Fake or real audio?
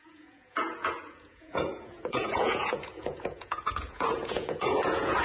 fake